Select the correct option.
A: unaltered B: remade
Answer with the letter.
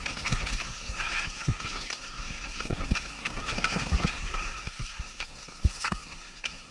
B